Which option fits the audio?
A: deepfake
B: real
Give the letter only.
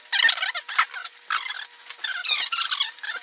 B